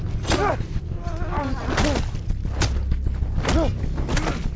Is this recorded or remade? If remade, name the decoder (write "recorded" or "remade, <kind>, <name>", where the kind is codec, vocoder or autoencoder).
recorded